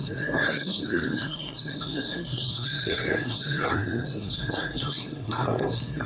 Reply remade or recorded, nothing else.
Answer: remade